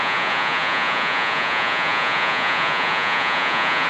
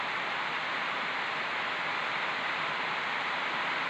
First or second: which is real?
second